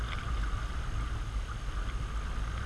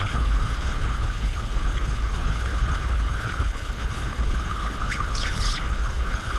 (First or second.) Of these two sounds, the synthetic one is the second